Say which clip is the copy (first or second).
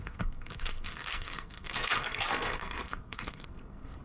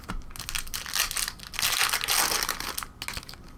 first